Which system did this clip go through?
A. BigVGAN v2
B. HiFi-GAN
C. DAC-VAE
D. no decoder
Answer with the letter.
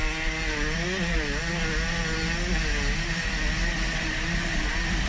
D